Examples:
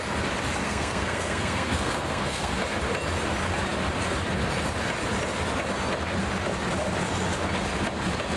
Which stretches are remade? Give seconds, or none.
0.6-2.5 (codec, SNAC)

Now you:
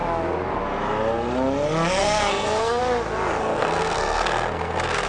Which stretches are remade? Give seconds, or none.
2.0-2.8 (codec, SNAC); 3.4-5.1

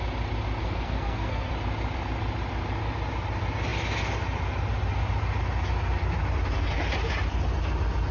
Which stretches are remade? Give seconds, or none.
0.6-1.5 (codec, SNAC)

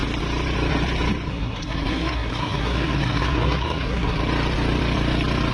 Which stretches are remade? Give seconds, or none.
1.3-4.2 (codec, SNAC)